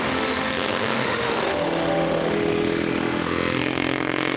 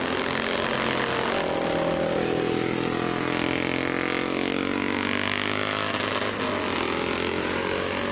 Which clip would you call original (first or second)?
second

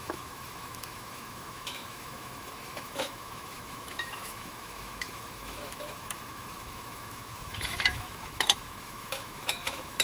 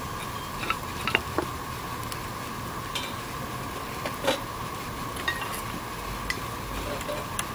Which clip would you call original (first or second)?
second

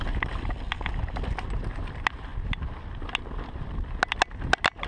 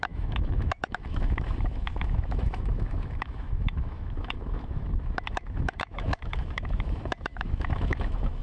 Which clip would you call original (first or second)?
first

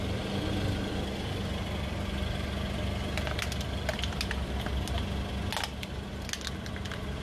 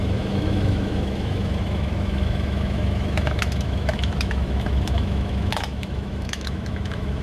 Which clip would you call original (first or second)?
first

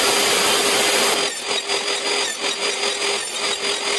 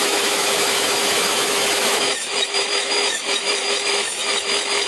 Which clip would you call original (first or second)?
first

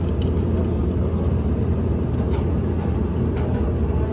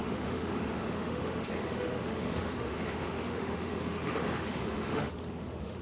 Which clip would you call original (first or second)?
first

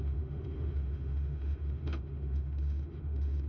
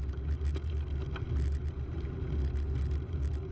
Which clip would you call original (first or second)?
second